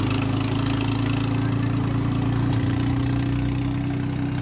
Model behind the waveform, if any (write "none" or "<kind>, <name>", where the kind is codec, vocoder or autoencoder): none